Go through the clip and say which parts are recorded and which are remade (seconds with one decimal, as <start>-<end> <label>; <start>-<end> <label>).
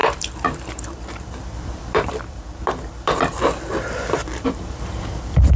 0.0-3.3 remade; 3.3-3.9 recorded; 3.9-5.6 remade